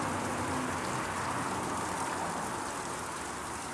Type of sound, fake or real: real